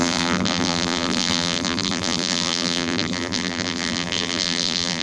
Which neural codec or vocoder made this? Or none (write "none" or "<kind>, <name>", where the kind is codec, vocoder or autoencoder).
vocoder, BigVGAN v2